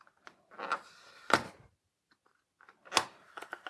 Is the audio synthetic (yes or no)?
no